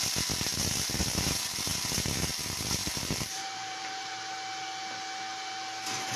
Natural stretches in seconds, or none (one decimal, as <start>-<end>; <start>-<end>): 0.0-2.8; 4.1-6.2